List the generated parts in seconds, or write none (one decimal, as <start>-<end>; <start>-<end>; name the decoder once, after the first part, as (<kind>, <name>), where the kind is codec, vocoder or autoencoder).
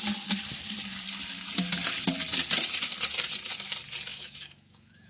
4.1-5.1 (autoencoder, DAC-VAE)